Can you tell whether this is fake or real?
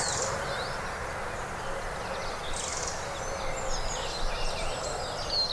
real